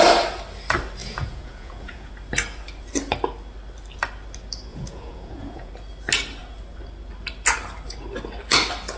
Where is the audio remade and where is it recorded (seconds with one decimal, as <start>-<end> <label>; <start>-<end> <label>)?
0.0-1.0 recorded; 1.0-2.1 remade; 2.1-4.7 recorded; 4.7-5.7 remade; 5.7-9.0 recorded

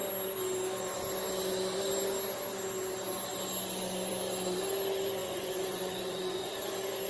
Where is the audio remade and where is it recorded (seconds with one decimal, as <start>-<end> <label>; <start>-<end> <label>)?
0.0-5.2 recorded; 5.2-6.5 remade; 6.5-7.1 recorded

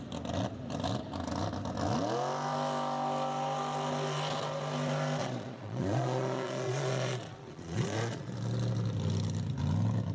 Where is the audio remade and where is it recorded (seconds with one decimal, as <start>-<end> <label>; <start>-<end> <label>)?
0.0-5.2 recorded; 5.2-8.3 remade; 8.3-10.1 recorded

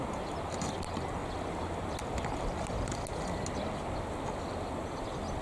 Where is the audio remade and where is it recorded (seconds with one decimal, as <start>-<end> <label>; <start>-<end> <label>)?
0.0-5.4 recorded

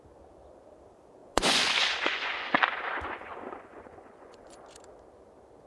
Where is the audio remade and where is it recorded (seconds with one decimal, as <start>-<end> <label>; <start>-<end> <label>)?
0.0-1.2 recorded; 1.2-4.6 remade; 4.6-5.7 recorded